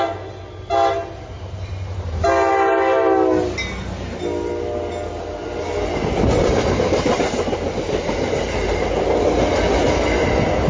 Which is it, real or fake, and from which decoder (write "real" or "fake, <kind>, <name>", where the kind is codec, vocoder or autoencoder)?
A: real